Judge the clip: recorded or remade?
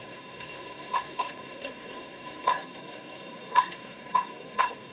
remade